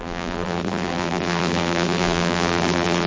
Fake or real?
fake